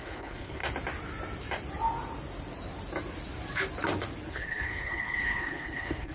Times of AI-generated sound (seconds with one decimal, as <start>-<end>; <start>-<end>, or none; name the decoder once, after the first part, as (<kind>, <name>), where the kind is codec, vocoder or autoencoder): 0.0-0.6 (codec, HILCodec); 4.3-6.1